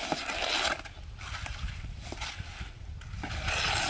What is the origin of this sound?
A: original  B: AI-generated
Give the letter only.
A